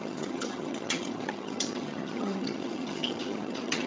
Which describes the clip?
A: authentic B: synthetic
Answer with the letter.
B